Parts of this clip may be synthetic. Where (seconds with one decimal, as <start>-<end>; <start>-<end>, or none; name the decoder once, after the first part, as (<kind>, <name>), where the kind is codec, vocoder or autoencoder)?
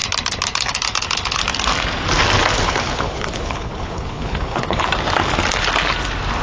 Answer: 2.6-4.9 (codec, HILCodec)